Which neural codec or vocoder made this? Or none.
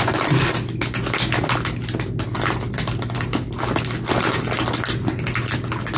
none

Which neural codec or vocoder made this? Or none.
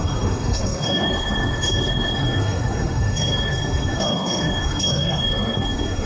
codec, SNAC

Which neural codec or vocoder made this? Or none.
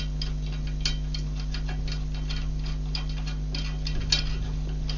none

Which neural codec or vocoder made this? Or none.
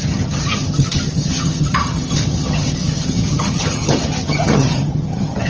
vocoder, HiFi-GAN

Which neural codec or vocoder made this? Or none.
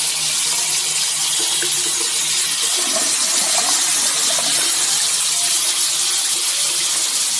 none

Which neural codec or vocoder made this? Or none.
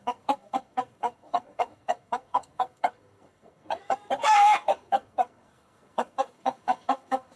codec, SNAC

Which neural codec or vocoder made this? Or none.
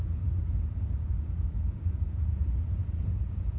vocoder, Vocos